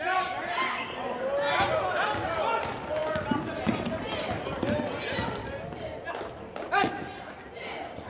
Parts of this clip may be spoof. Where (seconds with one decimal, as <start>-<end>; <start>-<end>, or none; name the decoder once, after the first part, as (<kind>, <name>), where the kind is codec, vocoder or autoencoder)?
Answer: none